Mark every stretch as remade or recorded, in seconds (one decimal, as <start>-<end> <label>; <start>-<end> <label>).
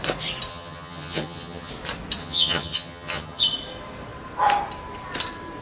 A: 0.0-0.5 recorded; 0.5-1.7 remade; 1.7-2.2 recorded; 2.2-3.4 remade; 3.4-5.6 recorded